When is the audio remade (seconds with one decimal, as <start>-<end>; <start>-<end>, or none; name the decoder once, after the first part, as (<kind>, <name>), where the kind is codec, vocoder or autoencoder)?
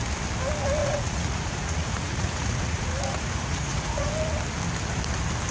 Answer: 0.8-4.1 (vocoder, Vocos)